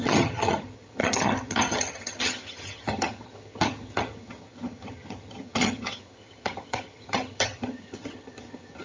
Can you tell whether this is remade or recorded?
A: remade